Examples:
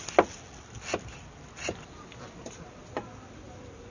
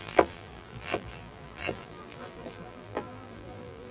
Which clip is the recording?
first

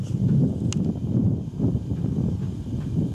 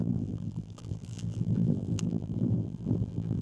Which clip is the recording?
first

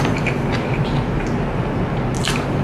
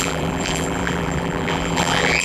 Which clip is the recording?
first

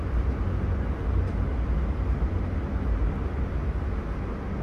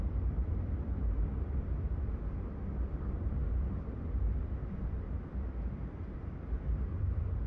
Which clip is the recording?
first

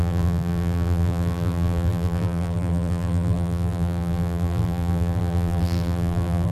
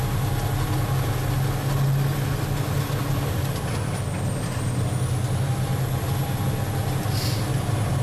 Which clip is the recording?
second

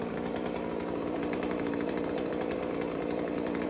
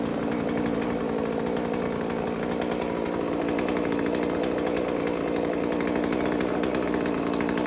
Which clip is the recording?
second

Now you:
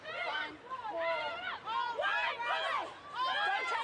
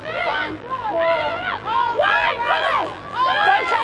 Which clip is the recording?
first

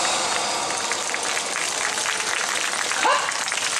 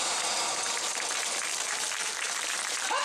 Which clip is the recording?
first